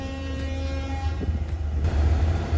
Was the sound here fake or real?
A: fake